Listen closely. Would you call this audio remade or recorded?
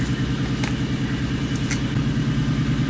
recorded